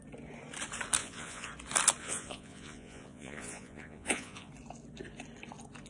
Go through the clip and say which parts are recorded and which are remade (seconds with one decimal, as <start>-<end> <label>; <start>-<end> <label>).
0.0-1.0 recorded; 1.0-1.5 remade; 1.5-2.0 recorded; 2.0-4.5 remade; 4.5-5.9 recorded